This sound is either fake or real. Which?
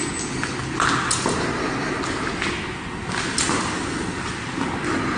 real